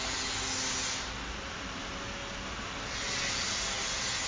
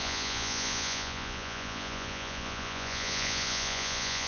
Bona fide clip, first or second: first